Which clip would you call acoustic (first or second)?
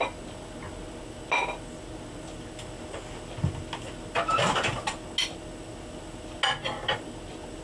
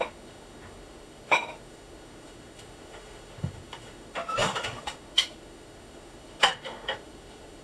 first